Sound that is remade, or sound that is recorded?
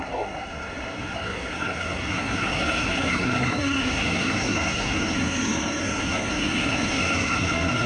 remade